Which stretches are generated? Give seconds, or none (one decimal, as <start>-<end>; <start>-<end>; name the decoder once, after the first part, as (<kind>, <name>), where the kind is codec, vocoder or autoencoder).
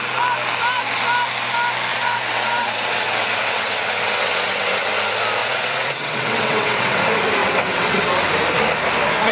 1.9-4.9 (vocoder, WaveNeXt); 5.4-7.0; 7.4-8.2